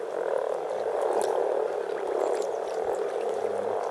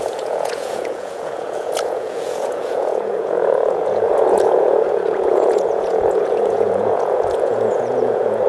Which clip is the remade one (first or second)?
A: second